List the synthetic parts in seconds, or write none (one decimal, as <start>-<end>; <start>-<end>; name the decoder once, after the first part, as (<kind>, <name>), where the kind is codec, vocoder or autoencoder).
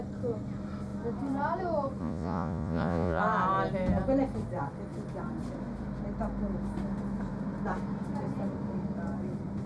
2.0-3.2 (vocoder, Vocos)